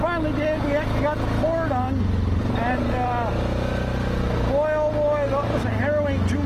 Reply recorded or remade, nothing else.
recorded